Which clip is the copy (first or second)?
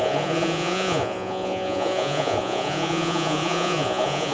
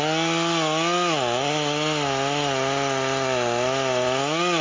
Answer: first